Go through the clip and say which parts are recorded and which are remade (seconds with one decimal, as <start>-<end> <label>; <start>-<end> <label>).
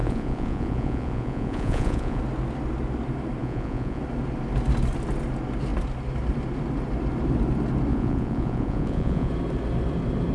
0.0-2.2 remade; 2.2-3.4 recorded; 3.4-4.0 remade; 4.0-7.9 recorded; 7.9-9.3 remade; 9.3-10.3 recorded